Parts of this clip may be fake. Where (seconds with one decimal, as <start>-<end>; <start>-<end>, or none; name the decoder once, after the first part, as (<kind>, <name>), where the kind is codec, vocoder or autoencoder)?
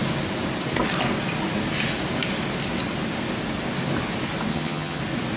4.5-5.0 (vocoder, HiFi-GAN)